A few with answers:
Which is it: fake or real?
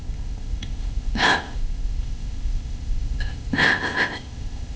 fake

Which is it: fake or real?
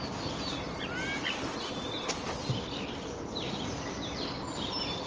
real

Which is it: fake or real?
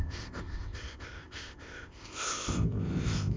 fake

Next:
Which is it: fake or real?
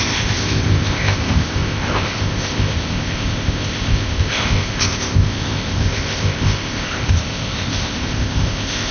fake